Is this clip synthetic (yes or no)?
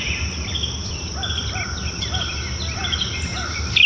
no